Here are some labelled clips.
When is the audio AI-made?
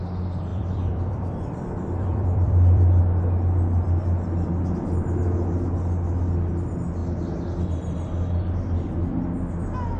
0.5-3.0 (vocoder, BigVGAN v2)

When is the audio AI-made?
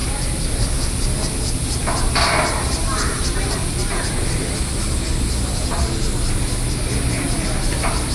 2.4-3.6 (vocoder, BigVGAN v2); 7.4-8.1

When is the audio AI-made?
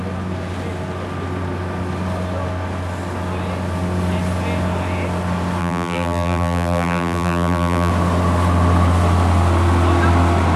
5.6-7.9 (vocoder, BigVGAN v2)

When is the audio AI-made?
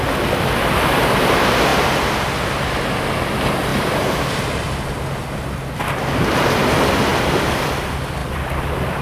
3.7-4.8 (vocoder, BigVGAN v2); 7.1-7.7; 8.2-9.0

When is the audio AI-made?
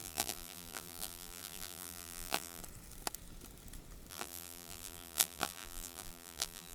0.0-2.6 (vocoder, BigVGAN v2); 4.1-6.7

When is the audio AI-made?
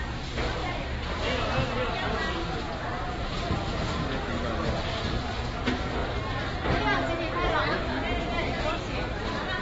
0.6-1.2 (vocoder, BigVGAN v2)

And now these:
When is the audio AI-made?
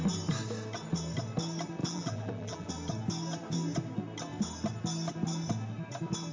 1.8-2.7 (vocoder, BigVGAN v2)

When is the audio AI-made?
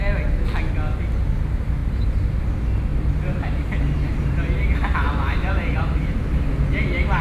1.8-2.4 (vocoder, BigVGAN v2); 2.9-7.2